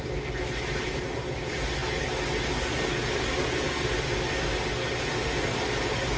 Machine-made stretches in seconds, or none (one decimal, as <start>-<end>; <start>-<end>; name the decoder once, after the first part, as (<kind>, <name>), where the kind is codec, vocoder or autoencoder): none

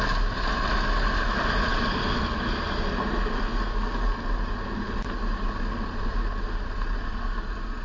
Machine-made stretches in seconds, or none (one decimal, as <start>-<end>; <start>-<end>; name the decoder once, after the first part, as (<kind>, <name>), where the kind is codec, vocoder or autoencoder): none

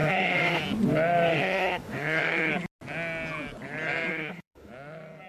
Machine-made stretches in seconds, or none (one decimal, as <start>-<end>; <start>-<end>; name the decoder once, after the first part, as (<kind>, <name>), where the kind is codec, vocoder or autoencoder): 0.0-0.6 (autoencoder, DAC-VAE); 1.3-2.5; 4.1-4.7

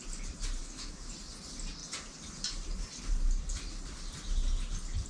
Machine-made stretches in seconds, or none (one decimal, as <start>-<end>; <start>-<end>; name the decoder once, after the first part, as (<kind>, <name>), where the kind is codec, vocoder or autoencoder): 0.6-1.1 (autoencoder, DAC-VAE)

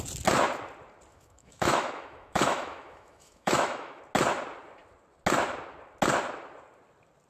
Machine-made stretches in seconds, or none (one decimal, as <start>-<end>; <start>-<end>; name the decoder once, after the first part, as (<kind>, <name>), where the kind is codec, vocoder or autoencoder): 1.1-4.0 (autoencoder, DAC-VAE)

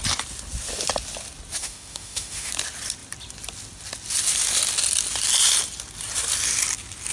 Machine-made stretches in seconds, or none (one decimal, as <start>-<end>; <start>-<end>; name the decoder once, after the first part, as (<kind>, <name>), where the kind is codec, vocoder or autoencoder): 1.6-2.5 (autoencoder, DAC-VAE)